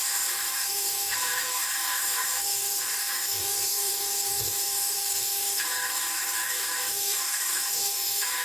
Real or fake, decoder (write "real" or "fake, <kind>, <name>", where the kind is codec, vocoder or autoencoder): fake, codec, DAC